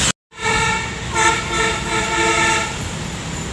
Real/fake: real